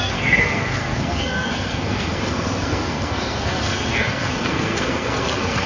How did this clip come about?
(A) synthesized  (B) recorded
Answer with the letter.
A